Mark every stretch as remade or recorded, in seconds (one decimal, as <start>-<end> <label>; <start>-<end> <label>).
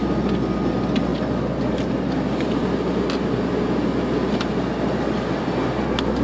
0.0-6.2 recorded